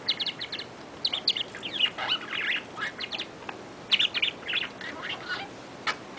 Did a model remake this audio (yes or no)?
no